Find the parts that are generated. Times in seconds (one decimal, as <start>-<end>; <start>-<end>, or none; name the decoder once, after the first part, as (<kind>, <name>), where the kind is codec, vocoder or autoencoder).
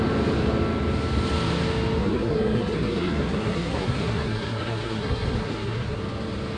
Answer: 2.0-6.0 (codec, SNAC)